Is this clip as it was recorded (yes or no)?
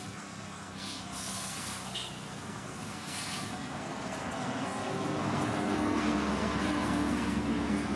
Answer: no